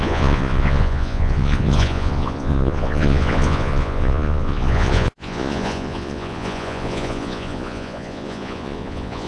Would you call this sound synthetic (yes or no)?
yes